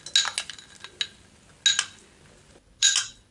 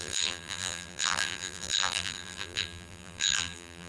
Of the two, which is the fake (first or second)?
second